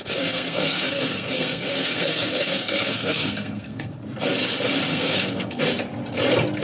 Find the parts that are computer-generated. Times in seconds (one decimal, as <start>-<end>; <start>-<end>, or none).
0.0-3.9; 4.9-5.6